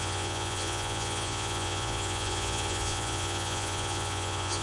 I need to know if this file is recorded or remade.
remade